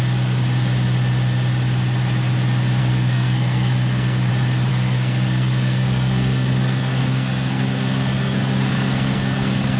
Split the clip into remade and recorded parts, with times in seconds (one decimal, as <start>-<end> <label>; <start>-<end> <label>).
0.0-2.8 recorded; 2.8-4.3 remade; 4.3-4.7 recorded; 4.7-9.8 remade